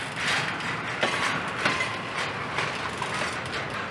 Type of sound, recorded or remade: recorded